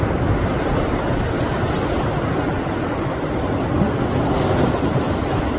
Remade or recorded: recorded